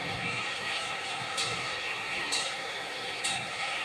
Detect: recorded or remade remade